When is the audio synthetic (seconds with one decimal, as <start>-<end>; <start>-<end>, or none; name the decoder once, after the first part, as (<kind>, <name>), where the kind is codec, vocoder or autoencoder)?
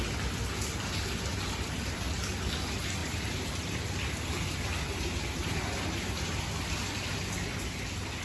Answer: 1.3-2.1 (vocoder, BigVGAN v2); 3.0-3.8; 4.7-6.4